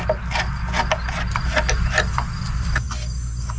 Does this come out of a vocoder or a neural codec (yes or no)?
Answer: no